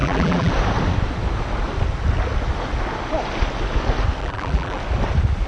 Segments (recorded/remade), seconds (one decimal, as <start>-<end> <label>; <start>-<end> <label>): 0.0-0.5 remade; 0.5-4.2 recorded; 4.2-4.8 remade; 4.8-5.5 recorded